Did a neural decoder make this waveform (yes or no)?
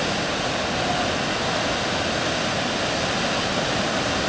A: no